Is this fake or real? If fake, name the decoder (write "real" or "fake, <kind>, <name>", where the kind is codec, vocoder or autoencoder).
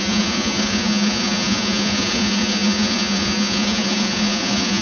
fake, vocoder, Vocos